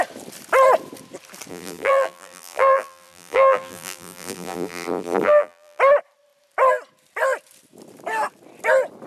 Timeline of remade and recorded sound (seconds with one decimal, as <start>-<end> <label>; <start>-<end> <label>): 0.0-1.5 recorded; 1.5-5.8 remade; 5.8-9.1 recorded